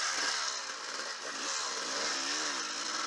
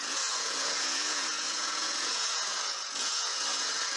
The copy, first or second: second